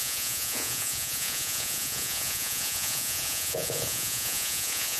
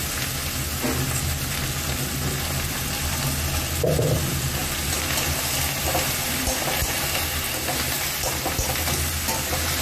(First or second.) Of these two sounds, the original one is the second